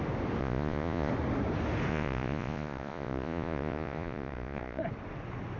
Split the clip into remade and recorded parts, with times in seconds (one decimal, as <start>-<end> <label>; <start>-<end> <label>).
0.0-0.4 recorded; 0.4-1.1 remade; 1.1-1.9 recorded; 1.9-4.8 remade; 4.8-5.6 recorded